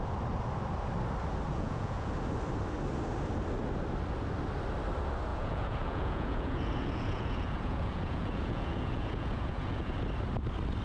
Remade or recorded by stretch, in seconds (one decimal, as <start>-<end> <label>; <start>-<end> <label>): 0.0-1.5 recorded; 1.5-2.1 remade; 2.1-5.3 recorded; 5.3-9.9 remade; 9.9-10.8 recorded